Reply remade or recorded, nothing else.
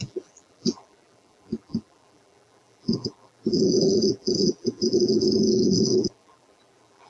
remade